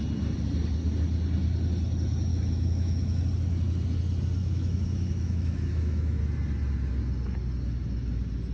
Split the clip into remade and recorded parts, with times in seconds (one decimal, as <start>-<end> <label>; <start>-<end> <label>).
0.0-2.3 recorded; 2.3-3.2 remade; 3.2-4.4 recorded; 4.4-6.2 remade; 6.2-8.5 recorded